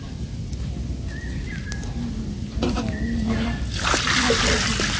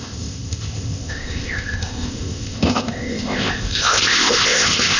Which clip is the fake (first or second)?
second